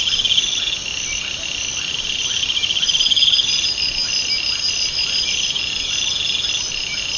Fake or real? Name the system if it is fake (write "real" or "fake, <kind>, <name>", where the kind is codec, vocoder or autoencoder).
real